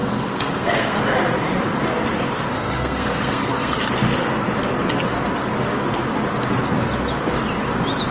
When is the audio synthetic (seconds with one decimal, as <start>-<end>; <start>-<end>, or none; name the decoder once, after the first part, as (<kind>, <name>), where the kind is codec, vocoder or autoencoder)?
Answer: 0.0-1.0 (codec, SNAC); 2.5-3.8